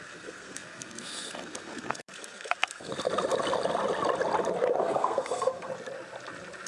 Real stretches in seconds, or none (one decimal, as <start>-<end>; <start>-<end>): 2.9-4.8; 5.7-6.7